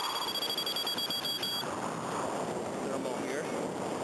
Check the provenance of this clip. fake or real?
real